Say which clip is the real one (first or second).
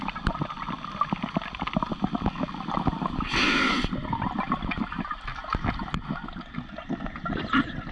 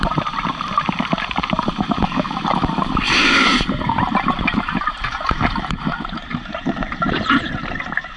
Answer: first